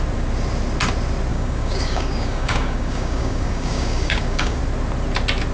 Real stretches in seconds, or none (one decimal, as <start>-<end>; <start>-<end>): 0.0-1.3; 4.6-5.5